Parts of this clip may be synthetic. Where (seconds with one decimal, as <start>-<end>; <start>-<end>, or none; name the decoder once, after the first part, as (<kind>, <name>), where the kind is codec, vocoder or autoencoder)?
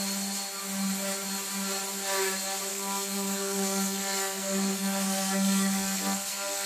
2.7-6.7 (codec, SNAC)